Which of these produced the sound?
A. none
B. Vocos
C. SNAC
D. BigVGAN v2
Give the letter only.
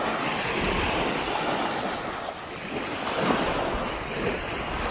A